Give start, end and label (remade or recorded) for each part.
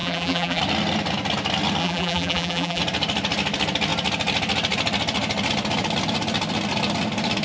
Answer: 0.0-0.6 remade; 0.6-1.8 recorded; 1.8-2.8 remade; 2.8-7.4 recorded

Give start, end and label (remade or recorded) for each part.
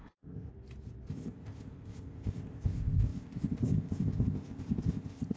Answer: 0.0-0.5 remade; 0.5-1.1 recorded; 1.1-5.4 remade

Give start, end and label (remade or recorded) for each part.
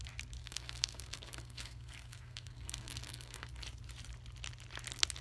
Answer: 0.0-0.4 recorded; 0.4-3.5 remade; 3.5-5.2 recorded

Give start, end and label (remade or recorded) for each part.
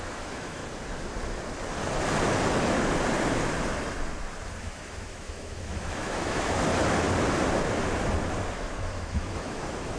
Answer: 0.0-0.6 remade; 0.6-4.6 recorded; 4.6-6.7 remade; 6.7-8.5 recorded; 8.5-10.0 remade